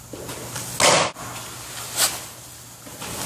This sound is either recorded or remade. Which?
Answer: recorded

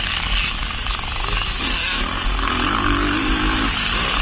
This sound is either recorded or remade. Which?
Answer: remade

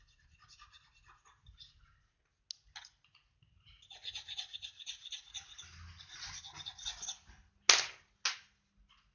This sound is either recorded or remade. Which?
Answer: recorded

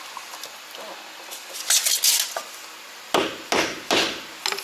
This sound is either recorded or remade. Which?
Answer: recorded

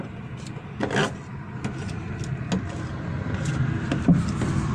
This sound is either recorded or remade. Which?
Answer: recorded